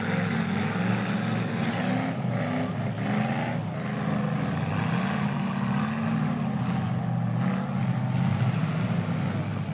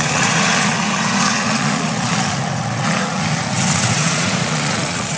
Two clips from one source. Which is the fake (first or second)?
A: second